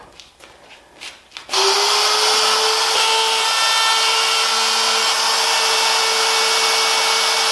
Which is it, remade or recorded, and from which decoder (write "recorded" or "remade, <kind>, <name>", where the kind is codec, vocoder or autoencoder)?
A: recorded